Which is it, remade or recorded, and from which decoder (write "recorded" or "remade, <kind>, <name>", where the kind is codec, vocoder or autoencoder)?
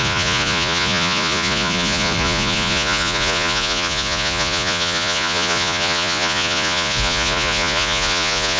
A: remade, vocoder, Vocos